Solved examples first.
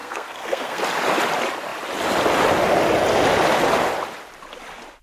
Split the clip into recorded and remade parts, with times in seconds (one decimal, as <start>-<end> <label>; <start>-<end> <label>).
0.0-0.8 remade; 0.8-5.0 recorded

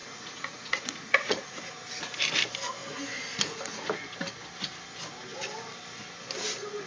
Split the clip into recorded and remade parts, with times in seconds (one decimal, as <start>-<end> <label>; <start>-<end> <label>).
0.0-1.6 remade; 1.6-6.9 recorded

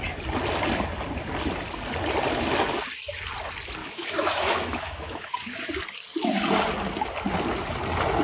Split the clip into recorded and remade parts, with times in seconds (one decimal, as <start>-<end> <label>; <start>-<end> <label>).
0.0-3.8 recorded; 3.8-5.6 remade; 5.6-8.2 recorded